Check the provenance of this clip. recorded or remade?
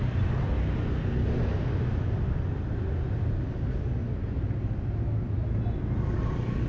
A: recorded